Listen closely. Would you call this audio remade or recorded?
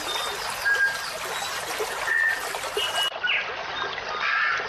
recorded